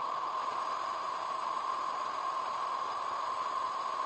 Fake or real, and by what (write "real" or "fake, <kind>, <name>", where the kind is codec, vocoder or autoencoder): real